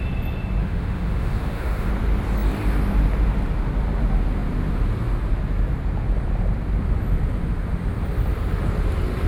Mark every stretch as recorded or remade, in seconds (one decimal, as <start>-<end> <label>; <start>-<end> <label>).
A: 0.0-0.6 recorded; 0.6-1.9 remade; 1.9-9.3 recorded